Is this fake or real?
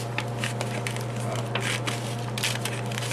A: real